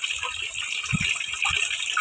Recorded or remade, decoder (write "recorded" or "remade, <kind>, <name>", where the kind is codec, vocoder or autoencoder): recorded